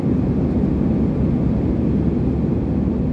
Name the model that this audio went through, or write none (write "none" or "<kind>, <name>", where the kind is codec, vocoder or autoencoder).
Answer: none